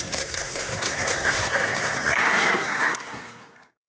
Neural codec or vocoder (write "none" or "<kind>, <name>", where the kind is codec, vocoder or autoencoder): codec, SNAC